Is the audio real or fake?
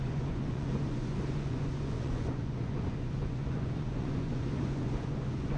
fake